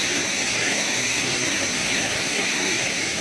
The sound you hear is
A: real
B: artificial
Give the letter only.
B